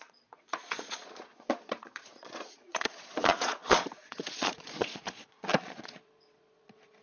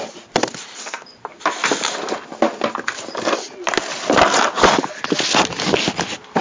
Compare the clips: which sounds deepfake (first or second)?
first